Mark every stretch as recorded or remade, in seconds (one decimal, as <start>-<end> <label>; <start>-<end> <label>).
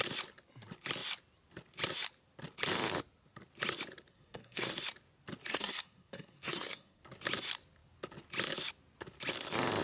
0.0-4.1 recorded; 4.1-4.7 remade; 4.7-5.5 recorded; 5.5-7.0 remade; 7.0-9.8 recorded